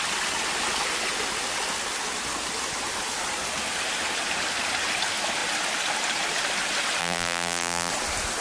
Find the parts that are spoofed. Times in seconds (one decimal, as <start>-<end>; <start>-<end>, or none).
7.0-7.9